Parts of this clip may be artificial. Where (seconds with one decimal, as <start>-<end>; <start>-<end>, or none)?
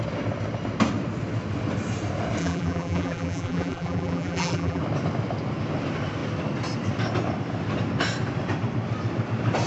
2.4-4.8